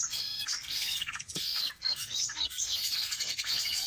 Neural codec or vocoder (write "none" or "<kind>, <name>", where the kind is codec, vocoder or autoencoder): codec, SNAC